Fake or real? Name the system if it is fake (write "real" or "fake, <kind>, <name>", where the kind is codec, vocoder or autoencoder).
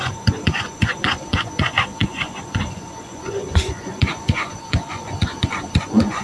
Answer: fake, vocoder, Vocos